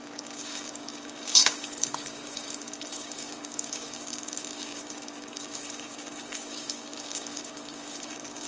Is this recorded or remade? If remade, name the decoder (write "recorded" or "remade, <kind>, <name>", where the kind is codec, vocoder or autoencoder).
remade, codec, DAC